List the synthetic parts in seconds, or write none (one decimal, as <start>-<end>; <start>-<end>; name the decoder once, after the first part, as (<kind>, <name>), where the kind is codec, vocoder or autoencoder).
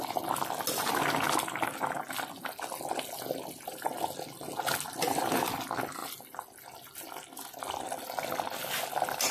none